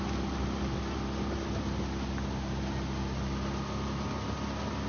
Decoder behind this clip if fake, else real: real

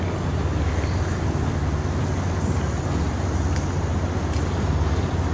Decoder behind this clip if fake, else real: real